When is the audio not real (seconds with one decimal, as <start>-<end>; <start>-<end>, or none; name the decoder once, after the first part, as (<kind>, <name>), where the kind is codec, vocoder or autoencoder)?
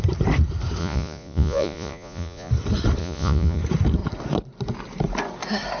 0.8-2.5 (vocoder, Vocos); 3.0-3.6